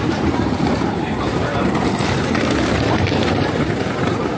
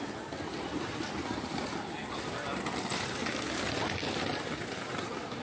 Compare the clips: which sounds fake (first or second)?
first